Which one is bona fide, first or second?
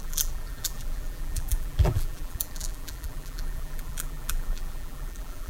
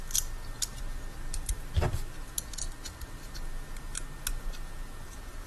second